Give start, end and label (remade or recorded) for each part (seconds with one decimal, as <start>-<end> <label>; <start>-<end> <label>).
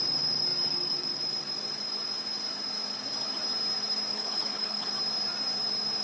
0.0-4.1 recorded; 4.1-4.9 remade; 4.9-6.0 recorded